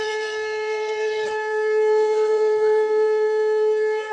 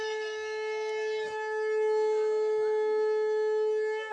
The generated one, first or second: first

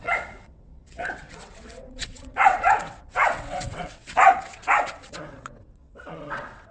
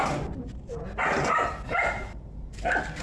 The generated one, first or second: first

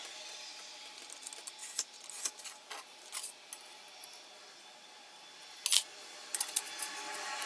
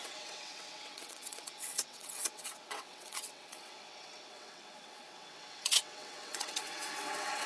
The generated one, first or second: second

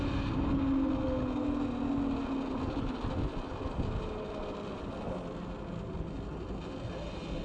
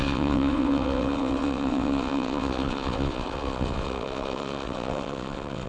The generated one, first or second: second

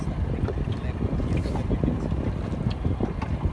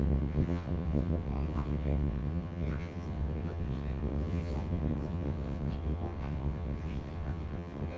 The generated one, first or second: second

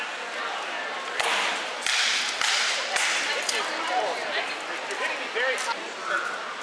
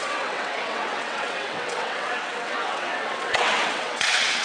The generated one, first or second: second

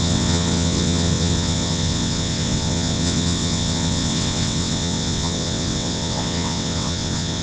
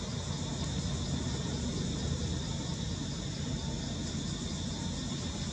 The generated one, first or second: first